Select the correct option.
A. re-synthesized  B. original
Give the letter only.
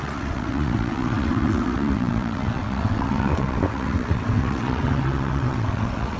A